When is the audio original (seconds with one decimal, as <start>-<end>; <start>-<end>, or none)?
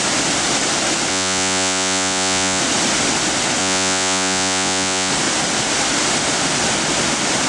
0.0-1.1; 2.6-3.6; 5.1-7.5